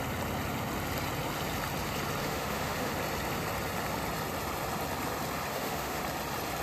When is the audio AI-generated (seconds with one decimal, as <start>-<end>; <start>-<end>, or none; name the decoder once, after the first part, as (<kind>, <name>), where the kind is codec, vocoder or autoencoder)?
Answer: 2.2-2.9 (autoencoder, DAC-VAE); 5.5-6.0